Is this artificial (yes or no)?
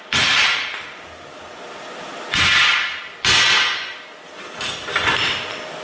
no